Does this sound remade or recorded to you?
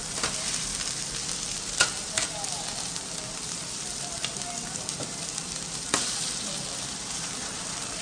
remade